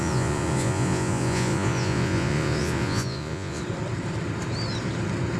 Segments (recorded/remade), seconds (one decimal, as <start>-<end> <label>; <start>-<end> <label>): 0.0-3.6 remade; 3.6-5.4 recorded